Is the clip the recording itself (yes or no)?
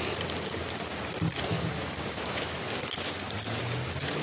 yes